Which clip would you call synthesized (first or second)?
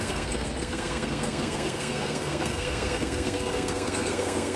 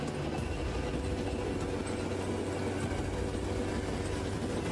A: first